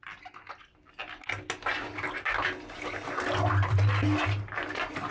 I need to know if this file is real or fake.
real